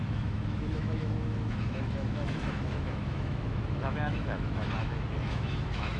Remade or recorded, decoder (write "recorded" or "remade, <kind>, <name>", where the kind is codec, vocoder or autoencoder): remade, autoencoder, DAC-VAE